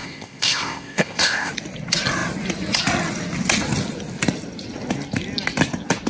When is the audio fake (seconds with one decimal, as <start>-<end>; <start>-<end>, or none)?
0.0-1.5